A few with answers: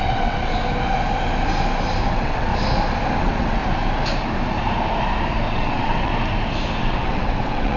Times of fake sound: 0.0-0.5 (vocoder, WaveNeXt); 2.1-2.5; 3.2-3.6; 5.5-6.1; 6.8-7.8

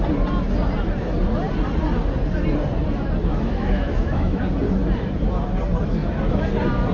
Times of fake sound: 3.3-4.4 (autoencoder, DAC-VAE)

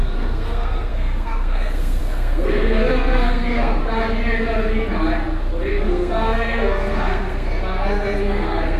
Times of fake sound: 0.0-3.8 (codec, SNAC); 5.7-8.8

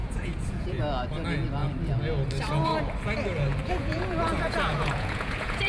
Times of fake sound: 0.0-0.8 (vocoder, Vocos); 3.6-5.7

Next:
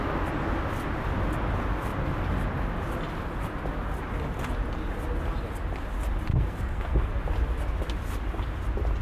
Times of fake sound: 6.3-7.1 (codec, SNAC)